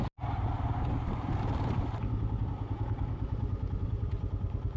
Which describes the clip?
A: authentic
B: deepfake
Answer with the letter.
A